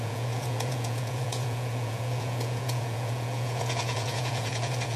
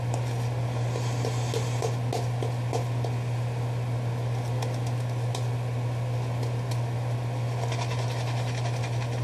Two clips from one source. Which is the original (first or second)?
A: second